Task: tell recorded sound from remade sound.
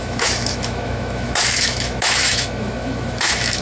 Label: remade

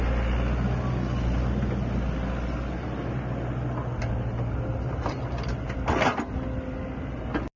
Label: recorded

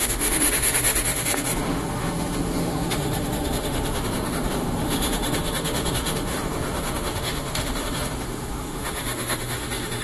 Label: remade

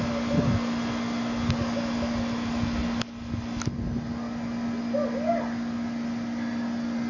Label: recorded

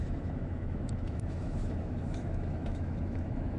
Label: remade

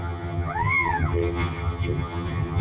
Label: remade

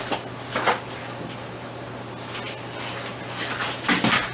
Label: recorded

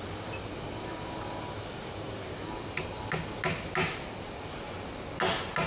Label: recorded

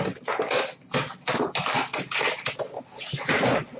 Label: recorded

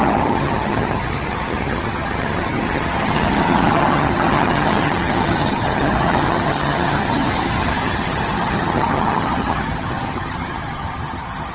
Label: remade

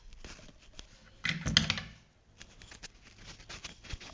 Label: recorded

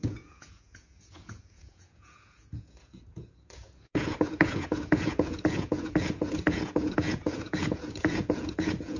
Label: remade